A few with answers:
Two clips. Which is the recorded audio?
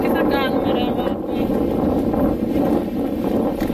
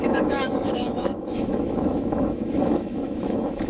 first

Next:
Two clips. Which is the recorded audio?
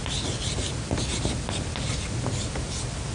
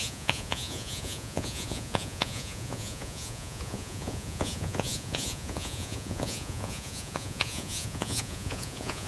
first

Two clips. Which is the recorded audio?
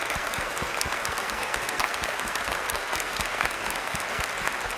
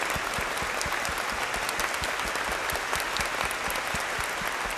second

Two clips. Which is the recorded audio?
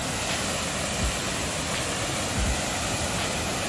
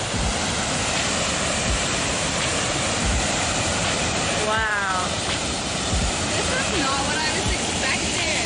first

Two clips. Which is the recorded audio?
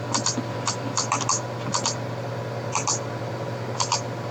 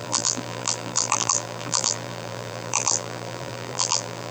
first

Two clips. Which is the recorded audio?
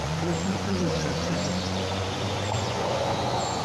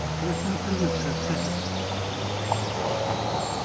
second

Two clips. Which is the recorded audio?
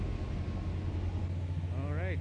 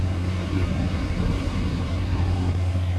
first